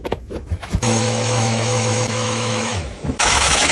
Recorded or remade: remade